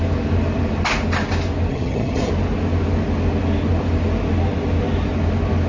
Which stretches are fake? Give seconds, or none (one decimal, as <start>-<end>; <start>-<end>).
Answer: 1.7-2.3